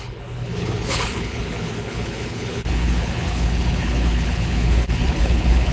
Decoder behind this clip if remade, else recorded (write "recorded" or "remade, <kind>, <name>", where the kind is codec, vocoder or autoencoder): remade, codec, HILCodec